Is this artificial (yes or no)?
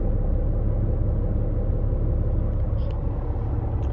no